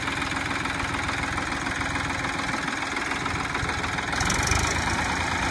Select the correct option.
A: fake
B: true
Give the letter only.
B